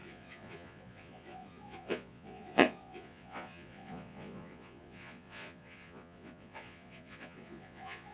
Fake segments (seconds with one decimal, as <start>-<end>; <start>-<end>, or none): 0.0-8.1